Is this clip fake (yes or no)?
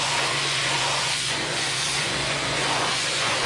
yes